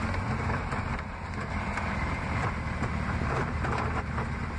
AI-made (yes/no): yes